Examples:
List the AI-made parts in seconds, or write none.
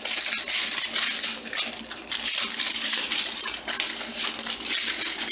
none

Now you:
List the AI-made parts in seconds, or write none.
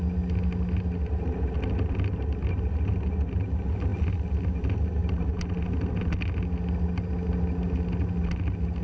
none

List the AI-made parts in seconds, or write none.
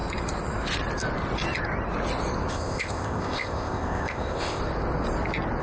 2.5-4.6 (codec, ZipCodec)